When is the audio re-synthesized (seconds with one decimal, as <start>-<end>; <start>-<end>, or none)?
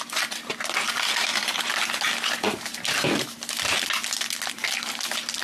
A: none